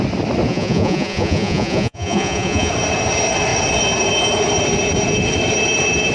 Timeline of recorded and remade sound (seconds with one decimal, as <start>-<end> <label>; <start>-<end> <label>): 0.0-0.5 recorded; 0.5-2.7 remade; 2.7-6.1 recorded